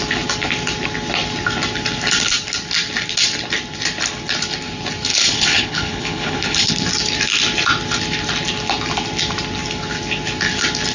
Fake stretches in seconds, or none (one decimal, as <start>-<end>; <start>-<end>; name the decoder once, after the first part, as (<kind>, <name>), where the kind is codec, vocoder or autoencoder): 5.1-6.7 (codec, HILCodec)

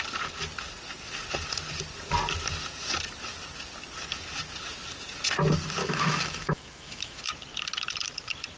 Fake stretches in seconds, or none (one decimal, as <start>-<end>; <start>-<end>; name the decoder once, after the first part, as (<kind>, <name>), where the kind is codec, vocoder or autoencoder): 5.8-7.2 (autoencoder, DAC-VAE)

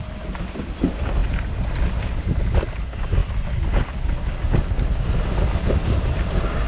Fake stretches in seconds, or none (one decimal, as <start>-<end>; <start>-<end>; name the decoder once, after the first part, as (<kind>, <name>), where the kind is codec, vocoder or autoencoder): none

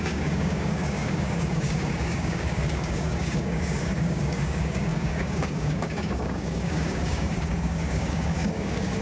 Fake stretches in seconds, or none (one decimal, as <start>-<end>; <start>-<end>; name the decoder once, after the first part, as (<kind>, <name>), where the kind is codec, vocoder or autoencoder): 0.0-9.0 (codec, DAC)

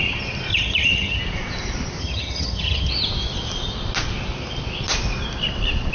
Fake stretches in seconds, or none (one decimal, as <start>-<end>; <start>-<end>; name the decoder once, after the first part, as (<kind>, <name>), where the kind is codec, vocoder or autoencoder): 0.5-1.2 (vocoder, HiFi-GAN); 2.0-2.9

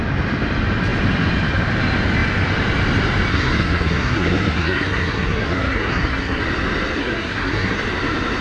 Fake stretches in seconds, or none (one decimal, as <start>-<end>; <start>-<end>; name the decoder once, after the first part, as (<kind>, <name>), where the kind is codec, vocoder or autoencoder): 3.3-6.4 (codec, SNAC); 7.0-7.8

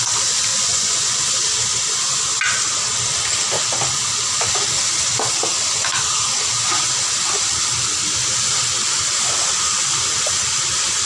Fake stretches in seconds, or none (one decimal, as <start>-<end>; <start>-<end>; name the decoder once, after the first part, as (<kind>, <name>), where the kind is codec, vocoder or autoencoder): 0.5-1.2 (vocoder, Vocos)